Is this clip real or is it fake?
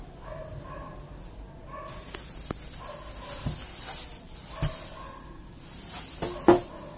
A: real